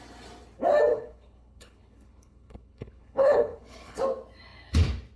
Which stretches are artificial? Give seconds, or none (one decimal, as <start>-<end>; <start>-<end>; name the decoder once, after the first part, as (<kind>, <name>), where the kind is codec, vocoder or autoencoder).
0.9-4.0 (codec, HILCodec)